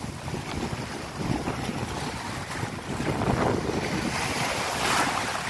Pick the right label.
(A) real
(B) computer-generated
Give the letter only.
A